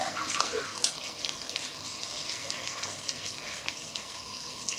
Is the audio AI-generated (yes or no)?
yes